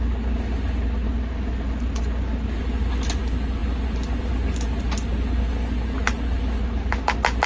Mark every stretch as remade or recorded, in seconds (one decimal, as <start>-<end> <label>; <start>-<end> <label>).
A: 0.0-7.5 recorded